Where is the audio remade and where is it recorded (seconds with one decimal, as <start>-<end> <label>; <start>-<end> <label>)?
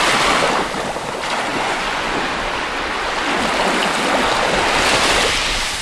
0.0-1.5 recorded; 1.5-2.3 remade; 2.3-5.8 recorded